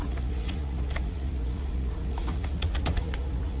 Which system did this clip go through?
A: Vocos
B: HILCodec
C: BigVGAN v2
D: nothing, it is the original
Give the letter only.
A